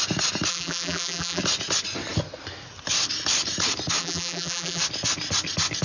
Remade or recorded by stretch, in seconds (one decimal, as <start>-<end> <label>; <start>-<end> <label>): 0.0-0.5 recorded; 0.5-1.4 remade; 1.4-4.0 recorded; 4.0-4.8 remade; 4.8-5.8 recorded